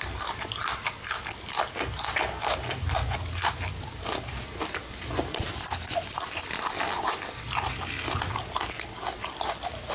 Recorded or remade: recorded